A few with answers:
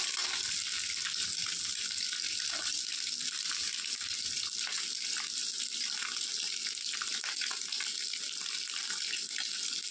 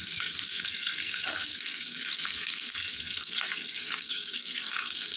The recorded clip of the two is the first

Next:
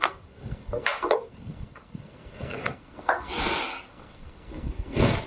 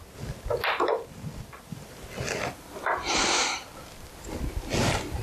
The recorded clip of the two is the second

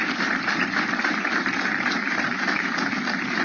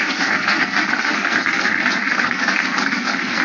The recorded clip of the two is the first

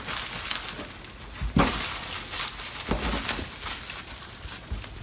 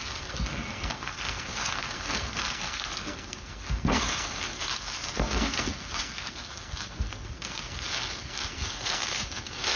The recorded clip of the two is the first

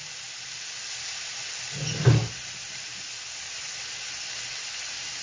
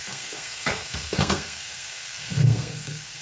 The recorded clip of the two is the first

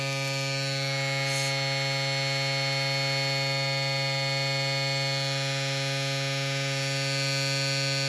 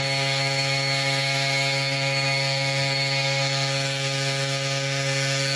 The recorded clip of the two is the first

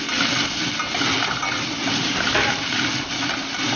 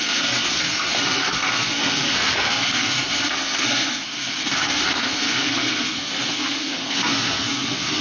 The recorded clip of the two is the first